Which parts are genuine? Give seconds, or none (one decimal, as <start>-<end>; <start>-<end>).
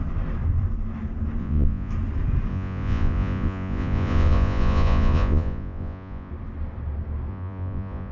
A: 0.0-1.4; 1.9-2.5; 6.3-7.3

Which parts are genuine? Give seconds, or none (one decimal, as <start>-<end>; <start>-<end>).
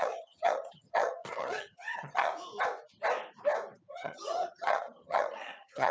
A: 2.3-3.9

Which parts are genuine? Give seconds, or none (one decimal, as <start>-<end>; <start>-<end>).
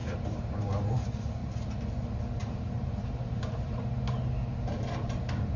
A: 0.5-2.4; 3.8-5.6